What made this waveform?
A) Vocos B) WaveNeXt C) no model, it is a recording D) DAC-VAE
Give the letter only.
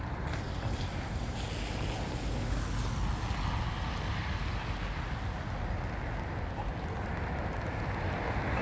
C